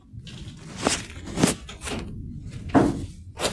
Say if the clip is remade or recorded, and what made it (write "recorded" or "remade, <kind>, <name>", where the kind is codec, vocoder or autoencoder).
recorded